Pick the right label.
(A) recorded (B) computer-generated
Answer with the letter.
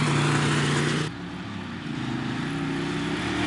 A